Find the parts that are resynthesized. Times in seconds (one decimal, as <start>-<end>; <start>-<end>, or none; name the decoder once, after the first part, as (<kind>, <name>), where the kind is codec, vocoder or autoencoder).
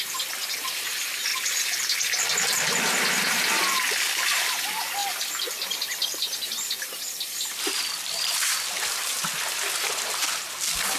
0.0-1.3 (vocoder, BigVGAN v2); 4.1-11.0